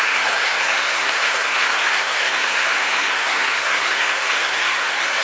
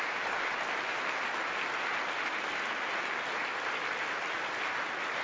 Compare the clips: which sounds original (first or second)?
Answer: second